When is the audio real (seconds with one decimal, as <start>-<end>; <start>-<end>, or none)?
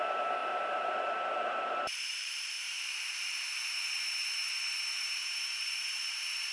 none